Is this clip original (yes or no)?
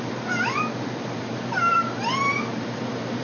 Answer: yes